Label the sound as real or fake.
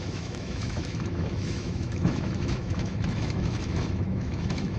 fake